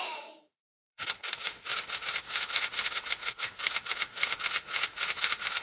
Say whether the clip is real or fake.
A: fake